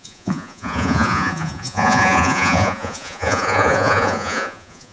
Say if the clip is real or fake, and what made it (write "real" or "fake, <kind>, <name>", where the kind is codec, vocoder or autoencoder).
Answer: fake, vocoder, Vocos